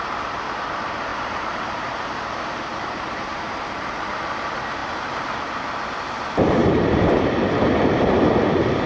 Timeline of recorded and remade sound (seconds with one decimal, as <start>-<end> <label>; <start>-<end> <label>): 0.0-1.1 recorded; 1.1-1.8 remade; 1.8-2.7 recorded; 2.7-4.1 remade; 4.1-6.6 recorded; 6.6-8.0 remade; 8.0-8.9 recorded